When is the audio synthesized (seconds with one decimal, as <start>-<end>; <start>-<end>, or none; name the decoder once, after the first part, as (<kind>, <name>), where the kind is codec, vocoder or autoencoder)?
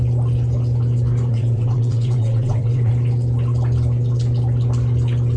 1.3-2.9 (vocoder, WaveNeXt)